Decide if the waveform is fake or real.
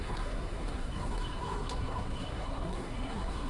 fake